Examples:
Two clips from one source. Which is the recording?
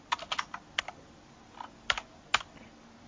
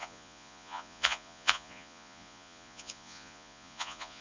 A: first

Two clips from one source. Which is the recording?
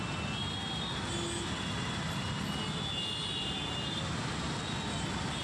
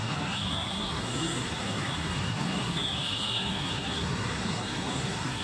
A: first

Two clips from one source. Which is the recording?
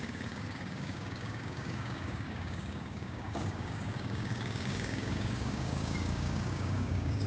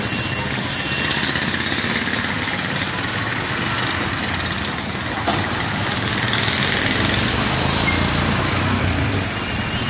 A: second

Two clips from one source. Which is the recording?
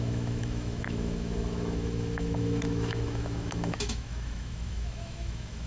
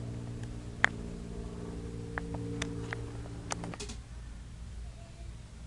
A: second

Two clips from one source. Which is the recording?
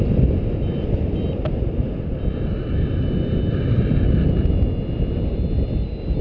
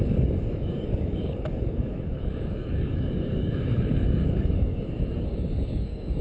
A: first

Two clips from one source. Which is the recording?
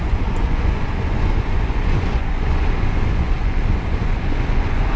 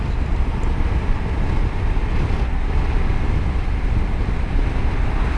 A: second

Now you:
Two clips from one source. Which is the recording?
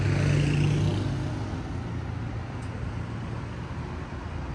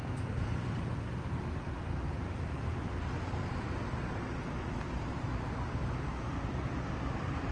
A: first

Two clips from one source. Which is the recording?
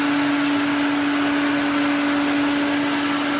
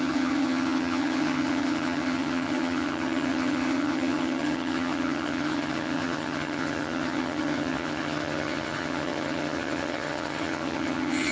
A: first